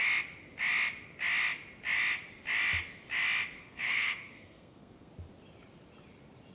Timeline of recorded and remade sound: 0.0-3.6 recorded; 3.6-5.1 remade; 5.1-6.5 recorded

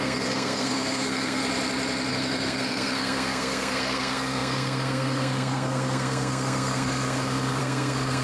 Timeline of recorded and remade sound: 0.0-1.4 remade; 1.4-2.1 recorded; 2.1-8.2 remade

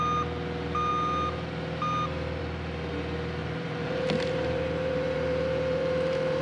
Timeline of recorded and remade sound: 0.0-3.4 recorded; 3.4-6.4 remade